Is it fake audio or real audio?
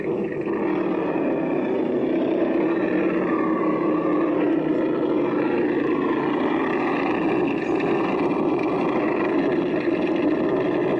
real